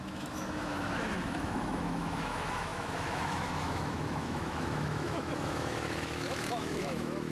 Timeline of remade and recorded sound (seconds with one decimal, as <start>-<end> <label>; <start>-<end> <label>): 0.0-7.3 remade